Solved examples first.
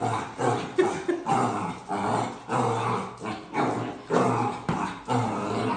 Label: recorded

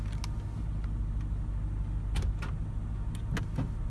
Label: recorded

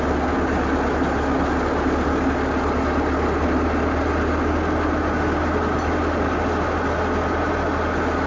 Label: recorded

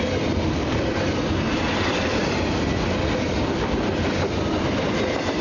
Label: remade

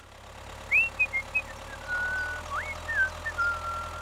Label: recorded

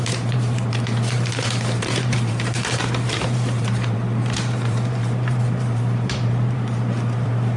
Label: remade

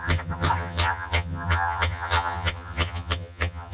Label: remade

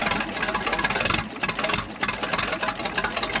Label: recorded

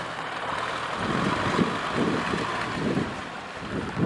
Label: recorded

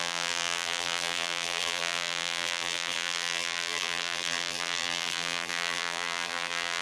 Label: remade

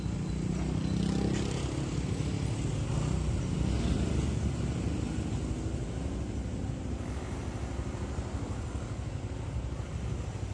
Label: recorded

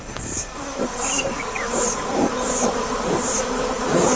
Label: remade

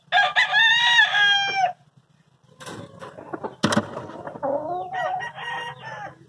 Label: recorded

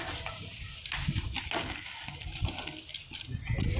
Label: recorded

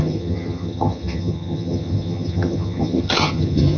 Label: remade